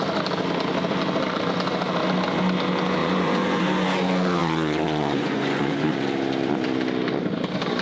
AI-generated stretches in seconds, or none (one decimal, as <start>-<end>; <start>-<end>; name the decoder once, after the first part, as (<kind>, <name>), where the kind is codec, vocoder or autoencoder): 3.0-3.6 (vocoder, Vocos); 4.4-5.9